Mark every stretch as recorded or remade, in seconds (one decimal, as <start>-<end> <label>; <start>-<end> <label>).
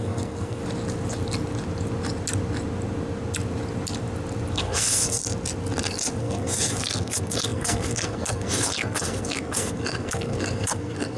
0.0-0.6 remade; 0.6-4.5 recorded; 4.5-5.2 remade; 5.2-6.2 recorded; 6.2-11.2 remade